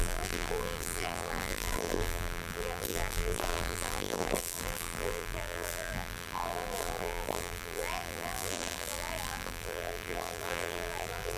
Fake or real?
fake